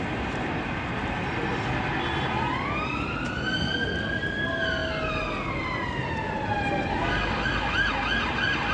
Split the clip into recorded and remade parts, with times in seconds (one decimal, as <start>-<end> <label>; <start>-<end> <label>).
0.0-8.7 recorded

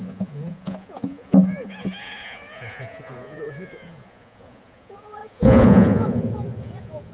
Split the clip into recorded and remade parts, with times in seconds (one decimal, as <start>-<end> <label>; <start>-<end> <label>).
0.0-7.1 remade

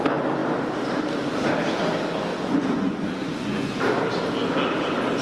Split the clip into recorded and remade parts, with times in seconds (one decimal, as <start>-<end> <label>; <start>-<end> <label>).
0.0-2.3 recorded; 2.3-3.7 remade; 3.7-5.2 recorded

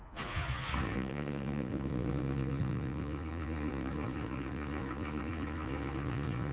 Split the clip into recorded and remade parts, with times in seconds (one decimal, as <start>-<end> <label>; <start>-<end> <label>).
0.0-6.5 remade

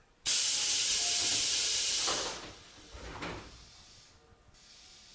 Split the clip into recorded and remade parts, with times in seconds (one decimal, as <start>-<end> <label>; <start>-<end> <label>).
0.0-5.1 recorded

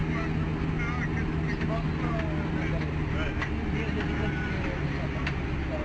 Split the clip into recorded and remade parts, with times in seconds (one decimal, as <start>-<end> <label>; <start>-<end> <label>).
0.0-5.8 recorded

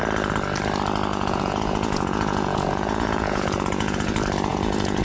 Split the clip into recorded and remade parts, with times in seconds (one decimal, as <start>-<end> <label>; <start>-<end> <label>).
0.0-1.1 recorded; 1.1-4.1 remade; 4.1-4.5 recorded; 4.5-5.0 remade

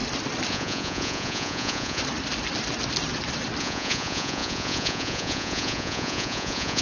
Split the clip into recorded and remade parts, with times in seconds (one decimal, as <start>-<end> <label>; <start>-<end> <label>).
0.0-0.5 recorded; 0.5-2.0 remade; 2.0-3.6 recorded; 3.6-6.8 remade